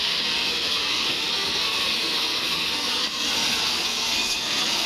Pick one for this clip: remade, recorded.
remade